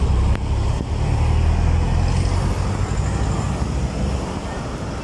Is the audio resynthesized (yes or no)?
no